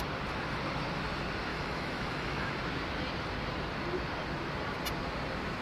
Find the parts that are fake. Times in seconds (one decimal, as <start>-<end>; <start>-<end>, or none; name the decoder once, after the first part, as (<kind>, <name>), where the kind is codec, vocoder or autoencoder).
1.5-2.5 (autoencoder, DAC-VAE)